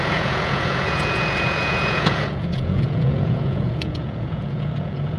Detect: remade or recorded remade